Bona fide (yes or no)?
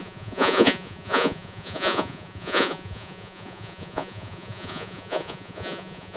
no